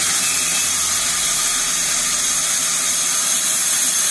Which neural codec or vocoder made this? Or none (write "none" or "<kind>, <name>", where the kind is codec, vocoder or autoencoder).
none